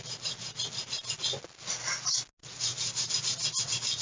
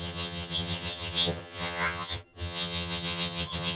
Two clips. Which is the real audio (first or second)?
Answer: first